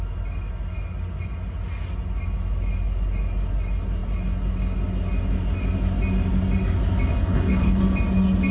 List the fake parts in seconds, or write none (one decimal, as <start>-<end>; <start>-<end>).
7.1-7.8